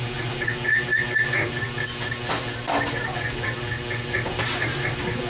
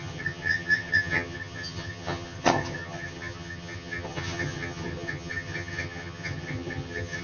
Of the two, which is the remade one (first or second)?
second